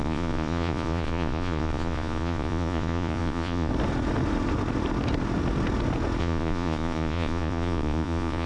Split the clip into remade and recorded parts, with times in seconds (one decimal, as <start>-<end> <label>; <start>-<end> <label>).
0.0-3.7 remade; 3.7-6.2 recorded; 6.2-8.5 remade